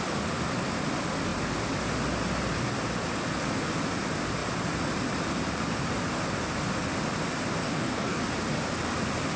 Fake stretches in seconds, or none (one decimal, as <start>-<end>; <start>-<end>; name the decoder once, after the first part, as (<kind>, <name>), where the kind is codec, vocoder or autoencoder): 7.6-8.2 (codec, DAC)